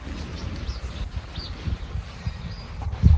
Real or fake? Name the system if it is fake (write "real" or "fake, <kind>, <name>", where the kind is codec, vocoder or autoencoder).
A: real